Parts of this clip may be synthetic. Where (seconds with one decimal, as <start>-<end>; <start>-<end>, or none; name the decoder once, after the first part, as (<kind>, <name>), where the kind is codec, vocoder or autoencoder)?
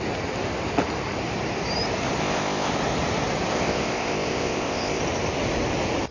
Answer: 2.2-2.7 (codec, ZipCodec); 3.5-5.0